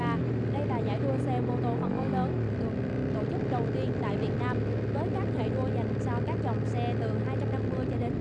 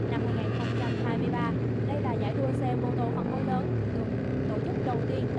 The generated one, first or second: second